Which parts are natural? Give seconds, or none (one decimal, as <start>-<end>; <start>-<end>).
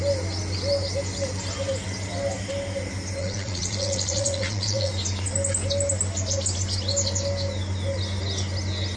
0.0-3.2; 4.9-9.0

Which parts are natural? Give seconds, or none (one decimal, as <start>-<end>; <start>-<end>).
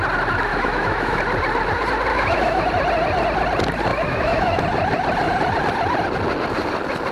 0.0-0.5; 1.2-2.1; 2.7-3.9; 4.6-7.1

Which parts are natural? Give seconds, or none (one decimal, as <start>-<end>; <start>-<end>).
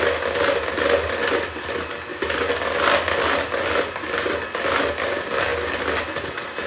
0.0-6.7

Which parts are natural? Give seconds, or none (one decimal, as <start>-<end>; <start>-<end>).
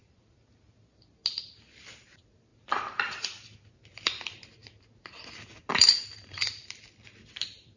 1.2-1.7; 2.5-4.0; 4.6-5.7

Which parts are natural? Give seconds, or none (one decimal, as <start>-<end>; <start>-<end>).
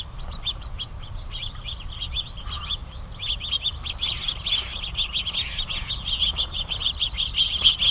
2.8-5.9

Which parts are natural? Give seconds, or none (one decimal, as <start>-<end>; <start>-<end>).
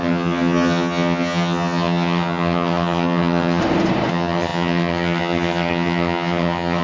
3.6-4.1